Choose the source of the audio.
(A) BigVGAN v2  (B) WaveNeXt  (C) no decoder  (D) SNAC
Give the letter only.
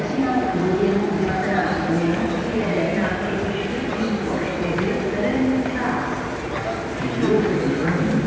C